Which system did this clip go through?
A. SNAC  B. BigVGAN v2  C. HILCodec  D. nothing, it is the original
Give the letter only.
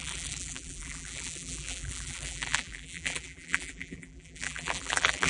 B